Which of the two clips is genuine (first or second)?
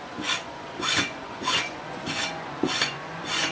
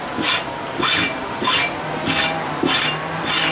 second